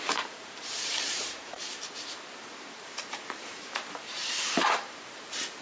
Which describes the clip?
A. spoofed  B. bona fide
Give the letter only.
A